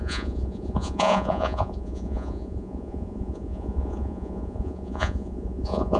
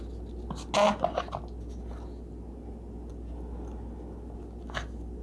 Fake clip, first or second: first